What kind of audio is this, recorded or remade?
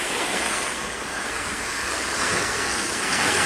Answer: remade